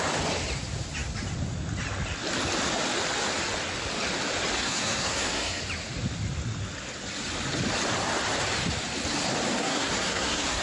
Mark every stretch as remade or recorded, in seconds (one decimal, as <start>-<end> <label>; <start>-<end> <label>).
0.0-4.6 recorded; 4.6-5.6 remade; 5.6-9.6 recorded; 9.6-10.6 remade